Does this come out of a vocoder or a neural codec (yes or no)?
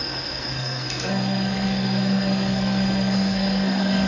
yes